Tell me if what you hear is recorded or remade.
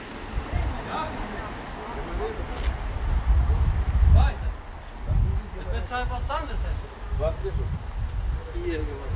recorded